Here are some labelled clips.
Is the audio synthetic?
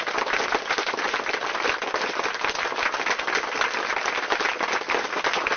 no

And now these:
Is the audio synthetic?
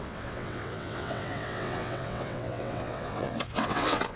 yes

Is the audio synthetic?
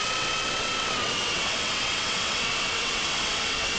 yes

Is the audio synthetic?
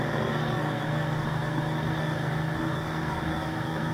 yes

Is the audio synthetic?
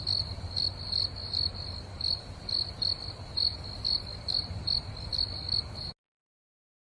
no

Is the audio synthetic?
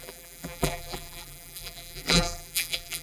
yes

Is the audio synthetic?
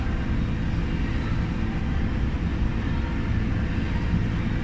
no